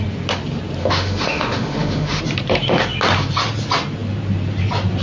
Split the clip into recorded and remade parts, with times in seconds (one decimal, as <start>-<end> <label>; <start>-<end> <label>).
0.0-0.8 recorded; 0.8-2.2 remade; 2.2-5.0 recorded

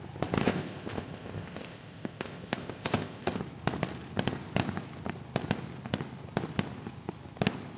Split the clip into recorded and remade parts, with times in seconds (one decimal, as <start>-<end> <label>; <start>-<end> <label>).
0.0-0.4 recorded; 0.4-3.4 remade; 3.4-7.8 recorded

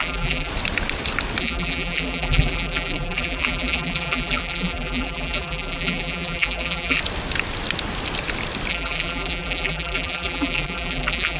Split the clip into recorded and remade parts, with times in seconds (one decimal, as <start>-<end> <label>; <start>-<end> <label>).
0.0-0.5 remade; 0.5-1.4 recorded; 1.4-7.0 remade; 7.0-8.7 recorded; 8.7-11.4 remade